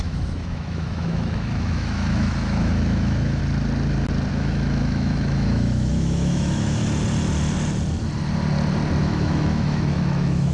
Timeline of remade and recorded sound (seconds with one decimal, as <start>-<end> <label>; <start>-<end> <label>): 0.0-3.4 remade; 3.4-4.3 recorded; 4.3-6.8 remade; 6.8-9.0 recorded; 9.0-10.5 remade